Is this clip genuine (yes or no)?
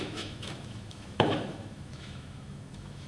no